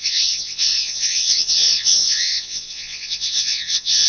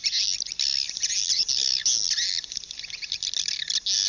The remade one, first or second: first